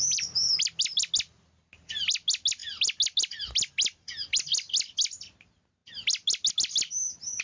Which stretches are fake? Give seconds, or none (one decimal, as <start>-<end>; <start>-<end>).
none